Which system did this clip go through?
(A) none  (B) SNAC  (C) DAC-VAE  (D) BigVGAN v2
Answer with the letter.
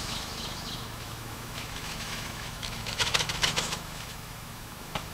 C